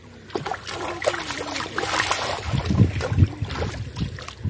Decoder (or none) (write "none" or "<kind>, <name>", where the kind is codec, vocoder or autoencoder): none